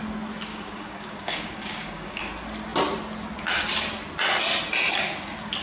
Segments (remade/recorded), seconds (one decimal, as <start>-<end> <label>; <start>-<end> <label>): 0.0-0.5 recorded; 0.5-2.2 remade; 2.2-5.6 recorded